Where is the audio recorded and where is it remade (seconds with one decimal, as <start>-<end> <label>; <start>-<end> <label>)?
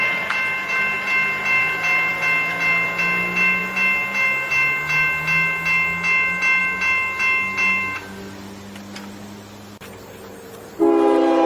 0.0-11.5 recorded